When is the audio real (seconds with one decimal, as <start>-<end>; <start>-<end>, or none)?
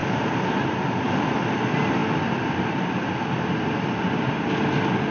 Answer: 0.0-2.0; 4.0-5.1